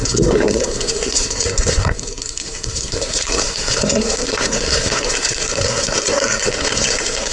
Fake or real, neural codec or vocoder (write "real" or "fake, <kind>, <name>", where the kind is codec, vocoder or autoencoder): fake, codec, SNAC